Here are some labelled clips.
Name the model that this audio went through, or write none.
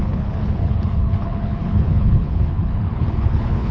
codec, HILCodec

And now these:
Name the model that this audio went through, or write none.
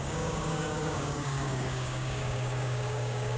codec, DAC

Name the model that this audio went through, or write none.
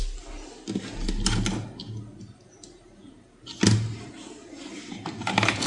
none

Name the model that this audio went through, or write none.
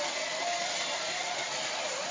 none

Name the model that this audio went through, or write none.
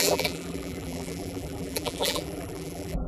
vocoder, BigVGAN v2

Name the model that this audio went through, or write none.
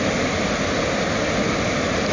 none